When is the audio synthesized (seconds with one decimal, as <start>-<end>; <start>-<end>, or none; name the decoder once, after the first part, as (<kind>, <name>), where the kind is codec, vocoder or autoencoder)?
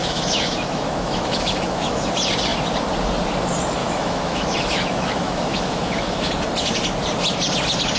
0.0-2.1 (autoencoder, DAC-VAE); 3.8-6.3